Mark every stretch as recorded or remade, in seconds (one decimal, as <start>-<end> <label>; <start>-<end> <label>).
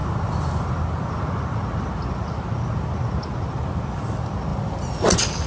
0.0-5.5 recorded